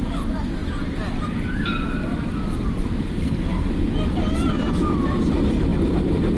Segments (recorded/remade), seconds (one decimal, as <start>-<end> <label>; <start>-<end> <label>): 0.0-3.2 recorded; 3.2-3.7 remade; 3.7-6.4 recorded